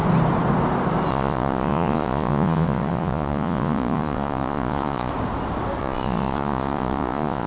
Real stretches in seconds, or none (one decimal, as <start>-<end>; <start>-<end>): 0.0-1.1; 5.1-5.8